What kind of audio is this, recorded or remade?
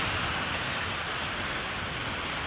recorded